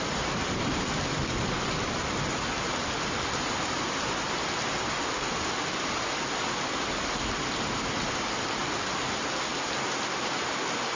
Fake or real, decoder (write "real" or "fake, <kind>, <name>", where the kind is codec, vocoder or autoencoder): real